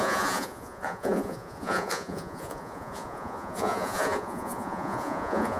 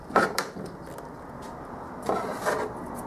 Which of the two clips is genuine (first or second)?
second